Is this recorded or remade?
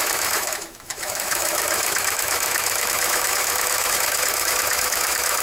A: remade